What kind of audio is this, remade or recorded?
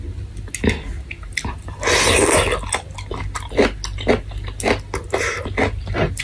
recorded